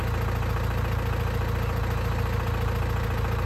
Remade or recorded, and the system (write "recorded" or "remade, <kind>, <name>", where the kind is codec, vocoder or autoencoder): recorded